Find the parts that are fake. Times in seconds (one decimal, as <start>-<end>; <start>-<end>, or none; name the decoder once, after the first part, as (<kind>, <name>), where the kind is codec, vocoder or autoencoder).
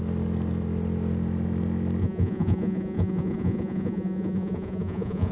2.0-5.3 (vocoder, Vocos)